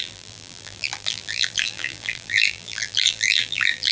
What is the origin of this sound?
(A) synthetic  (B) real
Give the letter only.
A